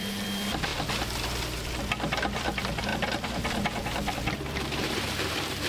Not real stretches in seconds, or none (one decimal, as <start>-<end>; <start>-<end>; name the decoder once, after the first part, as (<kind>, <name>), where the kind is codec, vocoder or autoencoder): 0.0-0.7 (vocoder, BigVGAN v2); 1.8-5.7